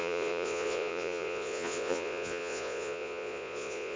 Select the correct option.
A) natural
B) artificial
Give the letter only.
B